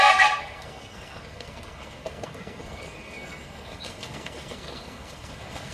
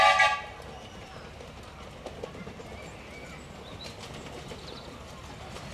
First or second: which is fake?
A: first